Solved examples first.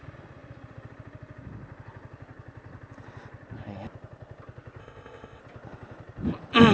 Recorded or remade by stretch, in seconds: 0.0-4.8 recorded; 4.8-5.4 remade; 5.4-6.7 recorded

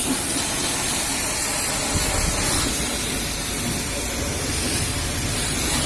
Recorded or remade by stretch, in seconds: 0.0-5.9 recorded

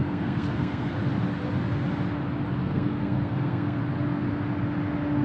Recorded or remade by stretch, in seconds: 0.0-0.9 remade; 0.9-2.6 recorded; 2.6-3.8 remade; 3.8-5.2 recorded